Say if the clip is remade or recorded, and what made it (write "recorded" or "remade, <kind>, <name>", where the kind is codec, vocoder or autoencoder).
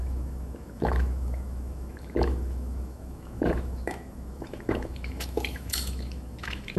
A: remade, autoencoder, DAC-VAE